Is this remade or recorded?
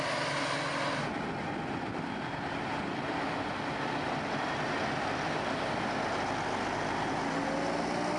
recorded